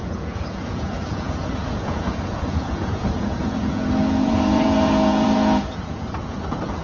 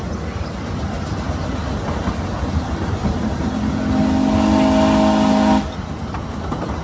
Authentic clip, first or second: second